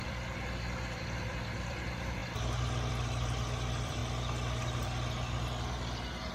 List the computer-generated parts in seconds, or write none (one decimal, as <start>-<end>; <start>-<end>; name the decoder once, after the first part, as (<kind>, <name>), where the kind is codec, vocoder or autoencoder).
0.0-4.0 (vocoder, BigVGAN v2)